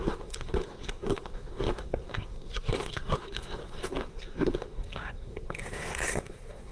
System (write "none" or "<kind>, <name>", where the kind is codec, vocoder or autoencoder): codec, SNAC